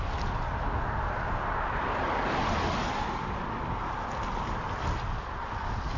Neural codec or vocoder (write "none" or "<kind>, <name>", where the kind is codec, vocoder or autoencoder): none